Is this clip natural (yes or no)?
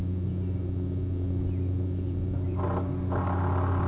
yes